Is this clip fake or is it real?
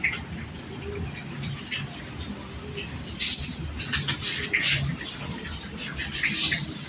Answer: real